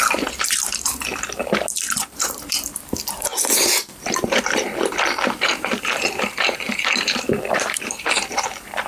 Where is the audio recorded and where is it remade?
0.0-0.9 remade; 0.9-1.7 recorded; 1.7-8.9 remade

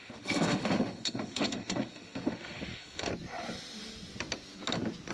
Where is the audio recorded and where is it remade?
0.0-3.1 remade; 3.1-5.1 recorded

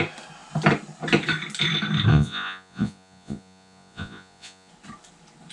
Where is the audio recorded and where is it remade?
0.0-2.1 recorded; 2.1-4.7 remade; 4.7-5.5 recorded